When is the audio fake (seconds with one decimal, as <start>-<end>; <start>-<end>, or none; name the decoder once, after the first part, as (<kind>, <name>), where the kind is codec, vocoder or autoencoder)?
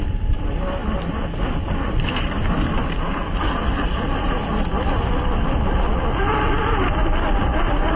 0.0-0.8 (vocoder, BigVGAN v2); 1.5-8.0